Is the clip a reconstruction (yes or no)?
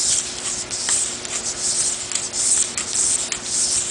no